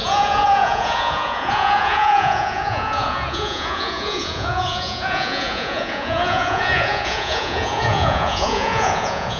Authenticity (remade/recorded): remade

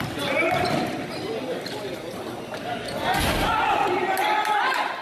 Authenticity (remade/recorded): recorded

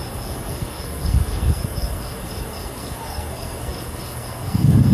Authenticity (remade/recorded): remade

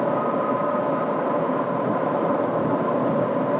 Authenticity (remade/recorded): recorded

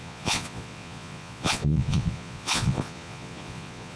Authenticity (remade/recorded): remade